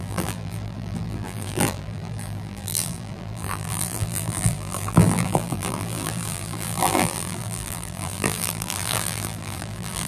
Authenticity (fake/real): fake